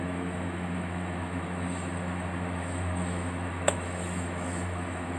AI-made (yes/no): yes